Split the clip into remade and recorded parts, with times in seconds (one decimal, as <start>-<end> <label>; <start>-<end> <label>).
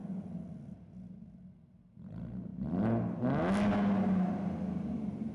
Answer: 0.0-5.3 recorded